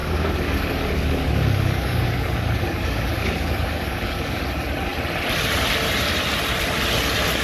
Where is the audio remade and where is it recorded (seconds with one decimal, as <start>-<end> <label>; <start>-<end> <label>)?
0.0-4.4 remade; 4.4-7.4 recorded